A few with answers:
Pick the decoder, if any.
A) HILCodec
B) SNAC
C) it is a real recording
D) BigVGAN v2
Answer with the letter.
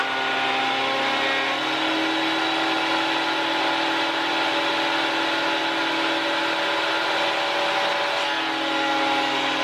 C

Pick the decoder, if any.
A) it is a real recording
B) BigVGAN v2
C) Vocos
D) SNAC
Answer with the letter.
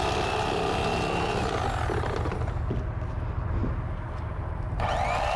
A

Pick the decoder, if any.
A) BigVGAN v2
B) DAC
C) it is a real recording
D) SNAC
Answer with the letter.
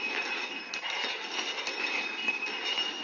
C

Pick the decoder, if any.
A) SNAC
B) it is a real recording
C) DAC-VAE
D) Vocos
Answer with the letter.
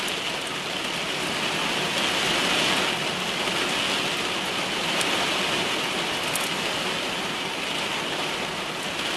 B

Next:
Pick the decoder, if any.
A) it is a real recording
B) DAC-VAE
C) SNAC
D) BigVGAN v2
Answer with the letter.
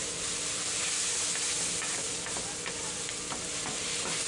A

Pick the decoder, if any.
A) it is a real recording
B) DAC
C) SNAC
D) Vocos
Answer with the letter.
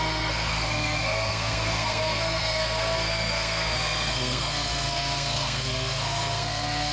C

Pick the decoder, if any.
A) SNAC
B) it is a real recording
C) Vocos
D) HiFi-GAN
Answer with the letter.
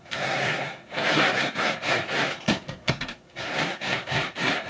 A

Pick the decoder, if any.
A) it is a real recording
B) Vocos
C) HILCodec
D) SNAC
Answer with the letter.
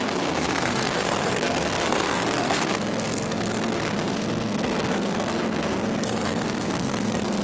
D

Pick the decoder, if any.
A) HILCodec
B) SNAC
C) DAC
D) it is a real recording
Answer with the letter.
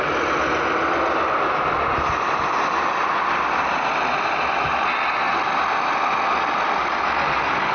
D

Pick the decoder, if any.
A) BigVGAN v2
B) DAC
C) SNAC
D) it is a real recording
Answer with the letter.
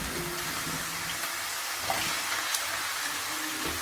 D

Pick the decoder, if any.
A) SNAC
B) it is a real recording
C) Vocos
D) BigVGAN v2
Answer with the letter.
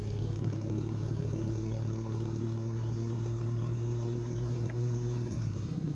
A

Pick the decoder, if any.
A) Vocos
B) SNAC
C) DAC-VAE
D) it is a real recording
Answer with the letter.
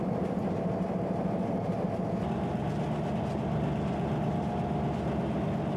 D